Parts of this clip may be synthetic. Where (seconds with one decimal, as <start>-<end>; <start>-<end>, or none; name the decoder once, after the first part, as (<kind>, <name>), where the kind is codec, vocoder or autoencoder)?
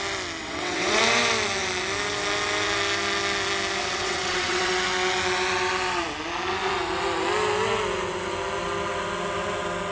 0.4-1.0 (vocoder, WaveNeXt); 3.8-4.7